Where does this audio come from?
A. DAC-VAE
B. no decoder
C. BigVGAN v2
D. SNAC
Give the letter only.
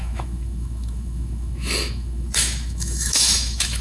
A